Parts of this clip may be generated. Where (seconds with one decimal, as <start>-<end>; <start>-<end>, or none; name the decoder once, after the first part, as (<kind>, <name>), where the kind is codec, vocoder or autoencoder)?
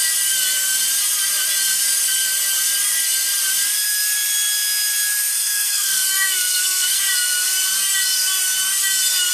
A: 5.3-7.0 (codec, SNAC)